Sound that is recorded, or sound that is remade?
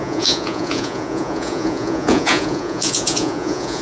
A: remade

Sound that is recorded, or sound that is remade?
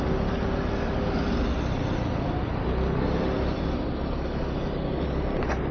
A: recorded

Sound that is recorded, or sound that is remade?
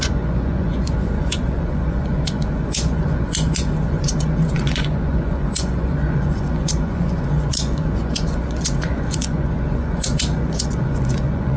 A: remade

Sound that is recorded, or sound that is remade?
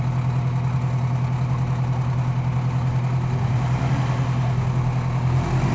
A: recorded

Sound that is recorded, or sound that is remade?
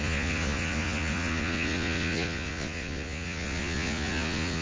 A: remade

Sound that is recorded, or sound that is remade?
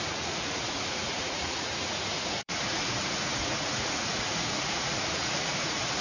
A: remade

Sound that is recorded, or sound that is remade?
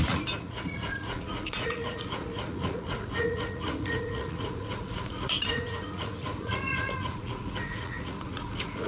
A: remade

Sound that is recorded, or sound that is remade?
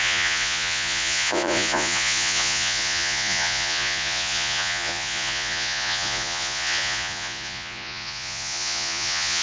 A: remade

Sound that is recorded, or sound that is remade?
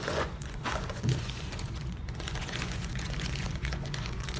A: remade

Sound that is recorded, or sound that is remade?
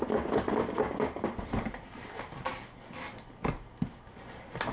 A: recorded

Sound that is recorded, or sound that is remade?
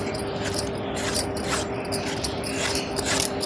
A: recorded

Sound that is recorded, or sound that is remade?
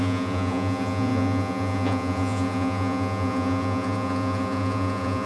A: remade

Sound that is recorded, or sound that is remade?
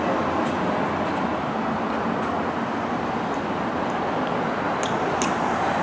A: recorded